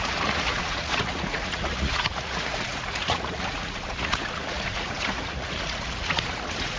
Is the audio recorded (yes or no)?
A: no